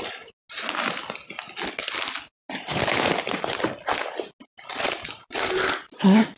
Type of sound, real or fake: real